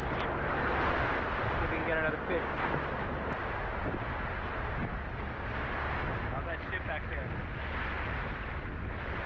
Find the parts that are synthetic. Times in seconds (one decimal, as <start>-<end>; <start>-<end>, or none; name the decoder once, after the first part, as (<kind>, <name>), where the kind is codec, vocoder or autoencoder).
none